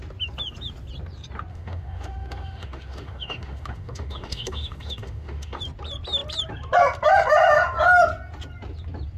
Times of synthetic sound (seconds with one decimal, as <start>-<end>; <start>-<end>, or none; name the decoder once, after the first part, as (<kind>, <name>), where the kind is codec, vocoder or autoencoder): 1.5-5.6 (autoencoder, DAC-VAE)